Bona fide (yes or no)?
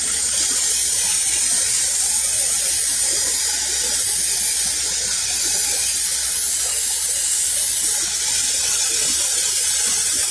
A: yes